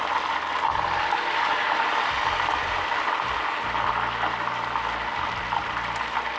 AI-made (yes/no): no